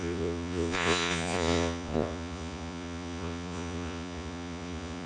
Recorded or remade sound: remade